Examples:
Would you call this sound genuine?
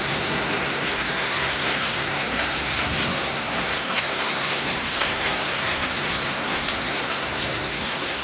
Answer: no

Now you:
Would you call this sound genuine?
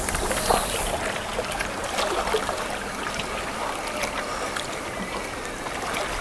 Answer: yes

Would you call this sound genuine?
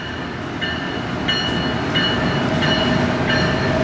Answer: yes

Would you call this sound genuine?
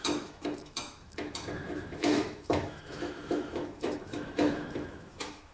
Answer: no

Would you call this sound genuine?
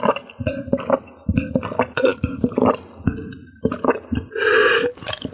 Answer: yes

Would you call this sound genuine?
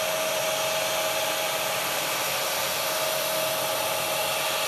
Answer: yes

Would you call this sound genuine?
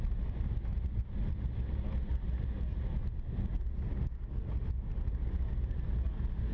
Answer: yes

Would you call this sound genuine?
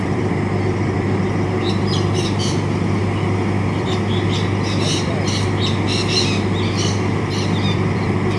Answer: no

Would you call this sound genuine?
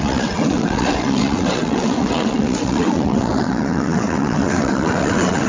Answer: no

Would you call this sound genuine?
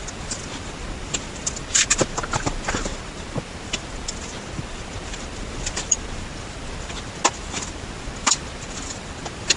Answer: yes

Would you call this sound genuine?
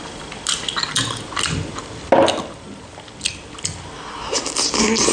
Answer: yes